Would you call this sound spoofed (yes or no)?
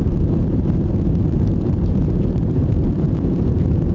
yes